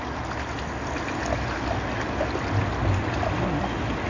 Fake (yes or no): no